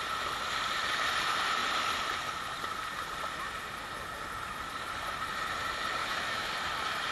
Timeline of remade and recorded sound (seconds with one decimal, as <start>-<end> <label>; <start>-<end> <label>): 0.0-6.0 recorded; 6.0-6.5 remade; 6.5-7.1 recorded